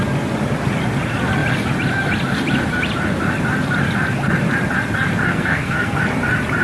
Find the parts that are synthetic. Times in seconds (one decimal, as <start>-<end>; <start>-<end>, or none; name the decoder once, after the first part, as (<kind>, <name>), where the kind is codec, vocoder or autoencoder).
5.3-6.0 (codec, SNAC)